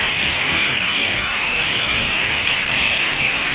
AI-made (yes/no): yes